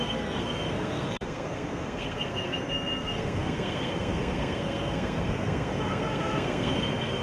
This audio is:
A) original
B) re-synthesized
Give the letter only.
B